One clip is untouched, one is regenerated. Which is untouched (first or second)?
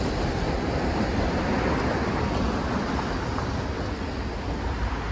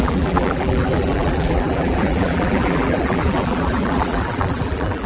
first